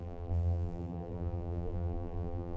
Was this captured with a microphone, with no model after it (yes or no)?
no